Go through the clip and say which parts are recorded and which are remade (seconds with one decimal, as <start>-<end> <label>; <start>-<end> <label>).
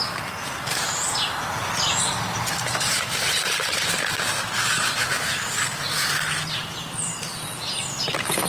0.0-0.7 recorded; 0.7-5.1 remade; 5.1-8.5 recorded